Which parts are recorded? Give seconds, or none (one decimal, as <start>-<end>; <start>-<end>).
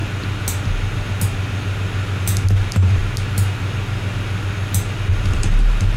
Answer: 0.0-2.2; 3.0-5.1